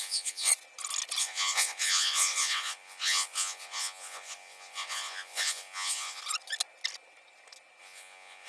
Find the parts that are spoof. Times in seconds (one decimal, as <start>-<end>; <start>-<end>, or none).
0.0-0.5; 1.2-6.2; 7.8-8.5